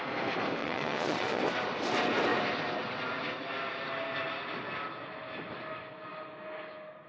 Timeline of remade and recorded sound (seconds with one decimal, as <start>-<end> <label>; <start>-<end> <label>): 0.0-0.6 recorded; 0.6-1.4 remade; 1.4-7.1 recorded